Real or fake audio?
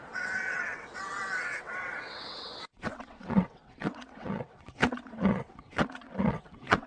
fake